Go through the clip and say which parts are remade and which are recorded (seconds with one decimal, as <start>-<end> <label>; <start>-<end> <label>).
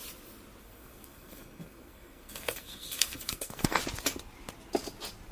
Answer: 0.0-0.6 recorded; 0.6-3.8 remade; 3.8-5.3 recorded